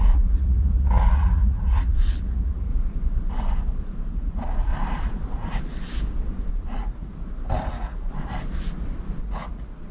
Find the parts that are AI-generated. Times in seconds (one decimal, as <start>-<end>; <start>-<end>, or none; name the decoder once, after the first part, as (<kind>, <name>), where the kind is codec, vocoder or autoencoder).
0.0-2.7 (vocoder, Vocos); 4.1-4.7; 6.5-7.1; 7.7-8.1; 9.2-9.9